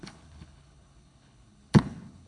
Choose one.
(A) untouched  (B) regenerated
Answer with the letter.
B